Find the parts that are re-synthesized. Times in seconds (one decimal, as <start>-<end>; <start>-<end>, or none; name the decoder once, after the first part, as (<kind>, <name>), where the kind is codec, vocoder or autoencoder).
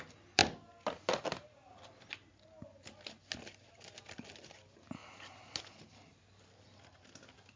none